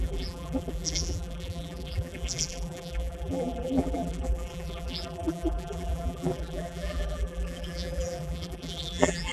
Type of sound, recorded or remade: remade